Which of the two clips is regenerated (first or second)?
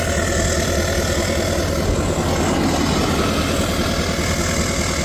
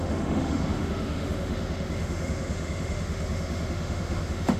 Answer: second